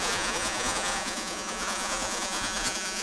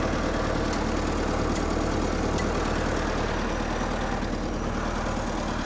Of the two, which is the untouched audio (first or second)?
second